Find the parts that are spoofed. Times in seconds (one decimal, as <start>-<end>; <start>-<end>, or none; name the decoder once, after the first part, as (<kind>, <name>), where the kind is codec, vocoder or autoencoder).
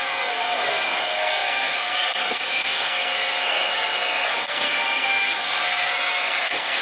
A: 0.0-6.8 (codec, SNAC)